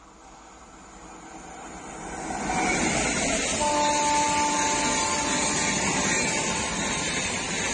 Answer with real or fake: real